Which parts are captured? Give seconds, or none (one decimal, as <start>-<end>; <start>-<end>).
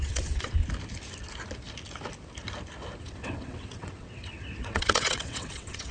0.6-3.0